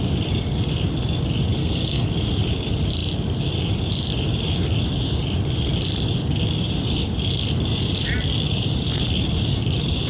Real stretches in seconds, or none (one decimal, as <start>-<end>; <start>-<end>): 0.0-1.6; 2.1-10.1